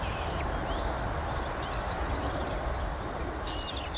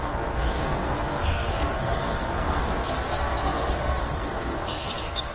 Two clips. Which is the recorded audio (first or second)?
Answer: first